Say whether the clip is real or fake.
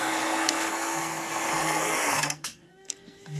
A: fake